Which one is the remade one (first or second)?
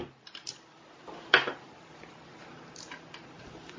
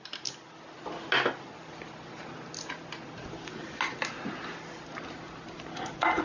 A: first